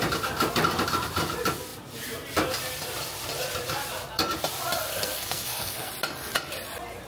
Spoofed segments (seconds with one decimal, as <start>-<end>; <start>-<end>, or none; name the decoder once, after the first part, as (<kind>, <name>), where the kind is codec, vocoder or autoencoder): 4.9-5.9 (codec, SNAC)